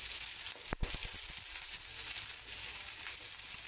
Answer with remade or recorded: recorded